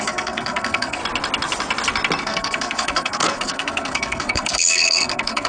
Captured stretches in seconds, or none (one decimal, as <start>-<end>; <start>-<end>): 1.0-2.2